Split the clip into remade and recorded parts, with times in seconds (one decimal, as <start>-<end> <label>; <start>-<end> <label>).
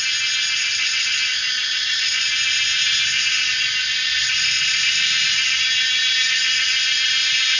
0.0-0.7 recorded; 0.7-2.3 remade; 2.3-3.8 recorded; 3.8-4.9 remade; 4.9-7.6 recorded